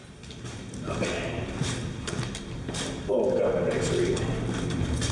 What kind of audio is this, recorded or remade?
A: recorded